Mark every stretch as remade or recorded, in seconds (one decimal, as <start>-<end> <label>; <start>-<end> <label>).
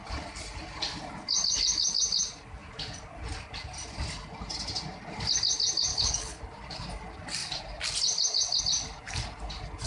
0.0-5.9 recorded; 5.9-6.4 remade; 6.4-9.9 recorded